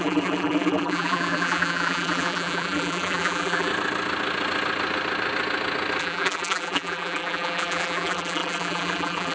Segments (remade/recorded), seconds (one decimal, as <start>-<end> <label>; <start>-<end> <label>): 0.0-3.7 remade; 3.7-6.0 recorded; 6.0-9.3 remade